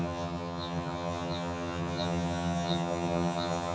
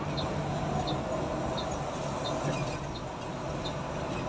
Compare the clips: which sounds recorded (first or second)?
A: second